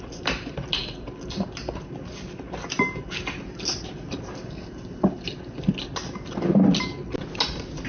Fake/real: real